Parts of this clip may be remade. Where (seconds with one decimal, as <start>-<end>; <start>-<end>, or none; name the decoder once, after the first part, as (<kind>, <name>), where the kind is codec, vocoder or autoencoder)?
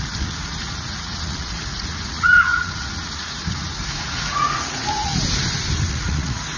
0.0-5.1 (vocoder, Vocos); 5.9-6.6